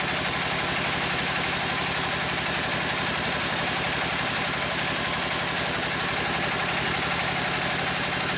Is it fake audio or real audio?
real